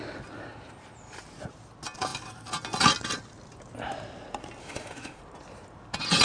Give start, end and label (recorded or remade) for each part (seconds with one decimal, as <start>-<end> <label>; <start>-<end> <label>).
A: 0.0-4.6 recorded; 4.6-5.2 remade; 5.2-6.2 recorded